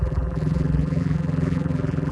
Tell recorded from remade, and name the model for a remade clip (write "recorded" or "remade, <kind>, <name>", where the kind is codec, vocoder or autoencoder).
remade, vocoder, BigVGAN v2